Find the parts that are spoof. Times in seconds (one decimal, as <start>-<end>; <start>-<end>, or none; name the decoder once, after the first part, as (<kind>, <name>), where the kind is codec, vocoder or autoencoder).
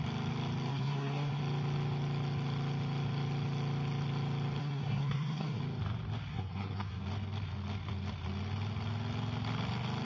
0.7-1.4 (codec, SNAC); 4.6-5.6; 6.3-7.0